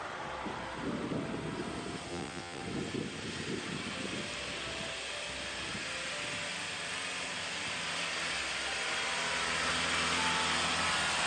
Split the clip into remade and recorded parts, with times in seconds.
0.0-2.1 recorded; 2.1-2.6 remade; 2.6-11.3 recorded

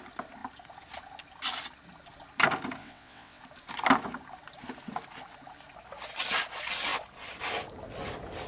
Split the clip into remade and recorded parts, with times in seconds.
0.0-2.8 recorded; 2.8-3.4 remade; 3.4-8.5 recorded

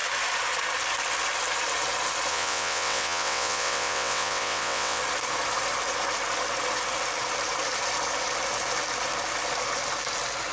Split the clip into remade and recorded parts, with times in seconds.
0.0-2.3 recorded; 2.3-5.0 remade; 5.0-10.5 recorded